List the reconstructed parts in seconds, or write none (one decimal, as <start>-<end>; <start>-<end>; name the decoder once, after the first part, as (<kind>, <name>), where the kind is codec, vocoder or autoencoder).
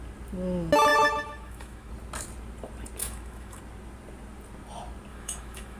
0.9-1.9 (autoencoder, DAC-VAE); 3.0-3.6; 5.1-5.8